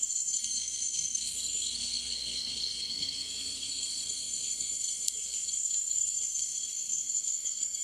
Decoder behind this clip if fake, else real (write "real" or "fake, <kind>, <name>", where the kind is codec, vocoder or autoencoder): fake, codec, SNAC